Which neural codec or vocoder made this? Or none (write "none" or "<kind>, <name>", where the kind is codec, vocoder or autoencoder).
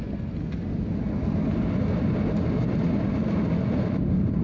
none